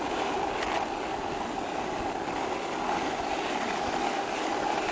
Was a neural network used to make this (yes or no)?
no